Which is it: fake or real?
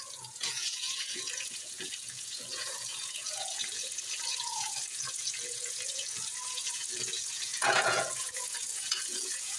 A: fake